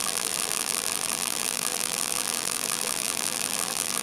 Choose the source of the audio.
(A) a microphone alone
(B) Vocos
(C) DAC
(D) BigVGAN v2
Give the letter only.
D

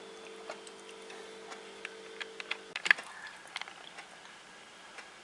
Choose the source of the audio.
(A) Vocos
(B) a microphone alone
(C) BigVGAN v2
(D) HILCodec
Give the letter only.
B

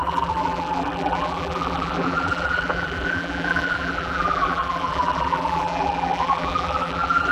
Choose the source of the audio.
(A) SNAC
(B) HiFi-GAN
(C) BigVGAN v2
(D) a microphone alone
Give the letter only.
C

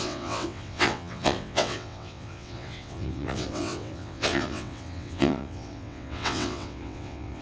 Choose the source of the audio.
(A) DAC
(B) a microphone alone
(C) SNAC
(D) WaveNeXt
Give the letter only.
D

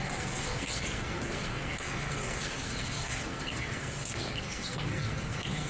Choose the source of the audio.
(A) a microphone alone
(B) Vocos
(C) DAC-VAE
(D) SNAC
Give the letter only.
D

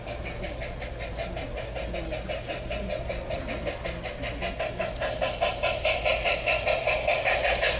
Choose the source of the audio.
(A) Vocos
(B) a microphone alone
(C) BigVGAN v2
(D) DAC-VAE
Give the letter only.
B